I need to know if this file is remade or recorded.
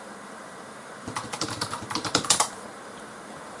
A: remade